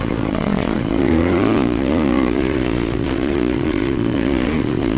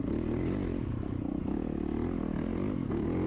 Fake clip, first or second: first